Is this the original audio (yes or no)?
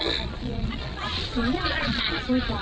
no